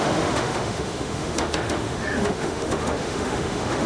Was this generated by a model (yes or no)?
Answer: yes